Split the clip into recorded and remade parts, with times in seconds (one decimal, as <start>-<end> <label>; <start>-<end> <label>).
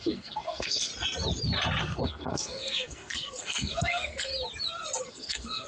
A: 0.0-0.9 remade; 0.9-1.8 recorded; 1.8-4.3 remade; 4.3-5.1 recorded; 5.1-5.7 remade